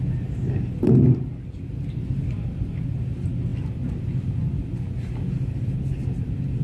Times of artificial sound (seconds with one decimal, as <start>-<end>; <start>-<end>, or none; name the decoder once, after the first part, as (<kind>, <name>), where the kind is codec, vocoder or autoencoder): none